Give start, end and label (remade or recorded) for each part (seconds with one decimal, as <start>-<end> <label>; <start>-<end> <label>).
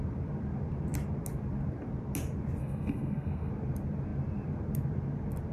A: 0.0-2.6 recorded; 2.6-3.5 remade; 3.5-5.5 recorded